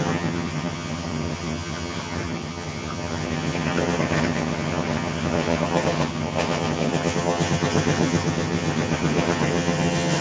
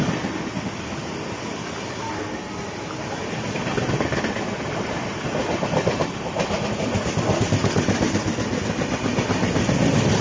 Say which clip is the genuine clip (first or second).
second